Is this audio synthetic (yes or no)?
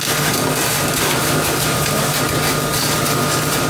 no